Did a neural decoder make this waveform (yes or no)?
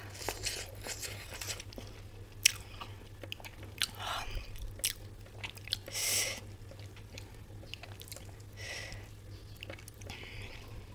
no